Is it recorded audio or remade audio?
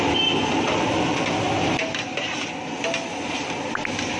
recorded